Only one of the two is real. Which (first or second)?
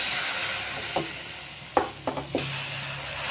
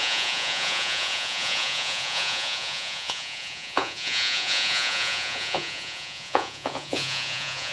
first